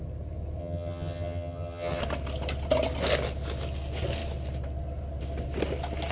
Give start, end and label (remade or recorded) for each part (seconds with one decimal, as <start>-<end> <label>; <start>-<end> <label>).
0.0-0.6 recorded; 0.6-2.0 remade; 2.0-6.1 recorded